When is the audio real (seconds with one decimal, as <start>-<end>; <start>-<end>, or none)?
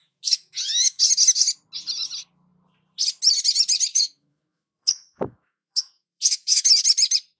1.0-3.9; 6.7-7.4